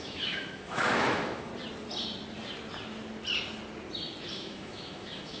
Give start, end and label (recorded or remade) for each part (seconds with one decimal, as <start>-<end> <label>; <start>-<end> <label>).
0.0-1.5 remade; 1.5-4.3 recorded; 4.3-5.4 remade